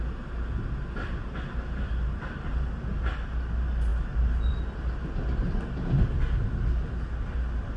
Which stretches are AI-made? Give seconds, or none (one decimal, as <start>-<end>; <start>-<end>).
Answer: none